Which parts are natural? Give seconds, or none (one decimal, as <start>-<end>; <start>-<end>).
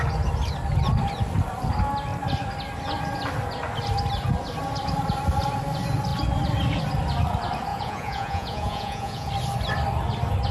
0.0-7.7; 9.3-10.5